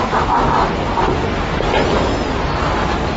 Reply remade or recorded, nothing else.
recorded